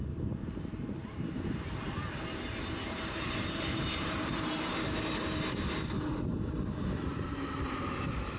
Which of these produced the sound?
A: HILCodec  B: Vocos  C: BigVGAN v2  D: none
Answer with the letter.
C